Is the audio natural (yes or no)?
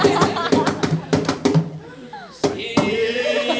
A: yes